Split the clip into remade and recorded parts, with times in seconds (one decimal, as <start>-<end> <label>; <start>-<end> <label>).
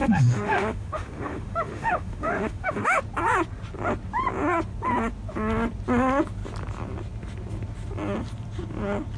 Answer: 0.0-3.0 remade; 3.0-9.2 recorded